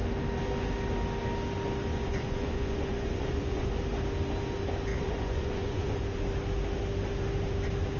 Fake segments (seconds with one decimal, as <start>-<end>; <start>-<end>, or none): 1.9-3.7; 4.9-6.0